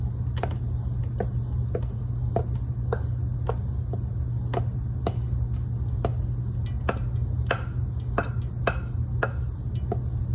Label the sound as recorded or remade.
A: recorded